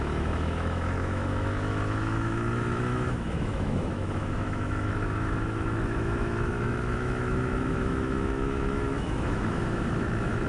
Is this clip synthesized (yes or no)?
yes